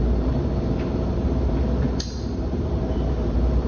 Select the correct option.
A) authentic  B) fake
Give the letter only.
B